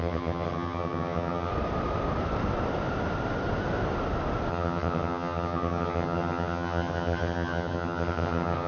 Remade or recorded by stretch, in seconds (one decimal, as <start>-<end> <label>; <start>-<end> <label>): 0.0-1.5 remade; 1.5-4.5 recorded; 4.5-8.7 remade